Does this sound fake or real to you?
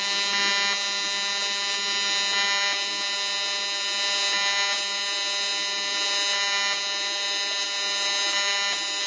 real